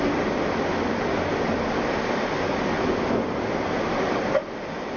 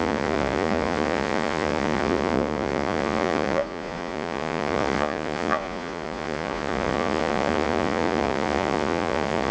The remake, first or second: second